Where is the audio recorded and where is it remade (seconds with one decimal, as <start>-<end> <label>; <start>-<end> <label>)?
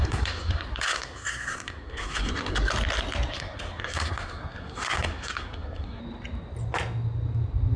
0.0-2.7 remade; 2.7-3.3 recorded; 3.3-6.0 remade; 6.0-7.8 recorded